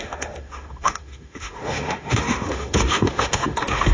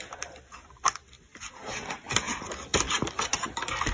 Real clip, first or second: second